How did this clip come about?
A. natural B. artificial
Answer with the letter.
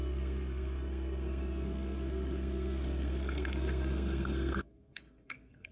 B